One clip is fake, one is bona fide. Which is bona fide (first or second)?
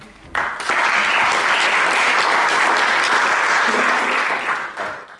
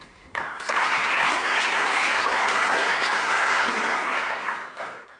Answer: first